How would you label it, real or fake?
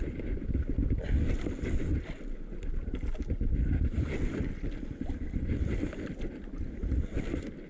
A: real